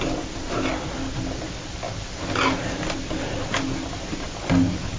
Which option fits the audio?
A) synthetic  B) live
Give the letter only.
B